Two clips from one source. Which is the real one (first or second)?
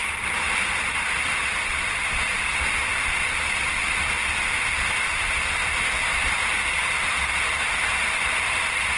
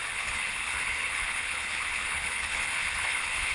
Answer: first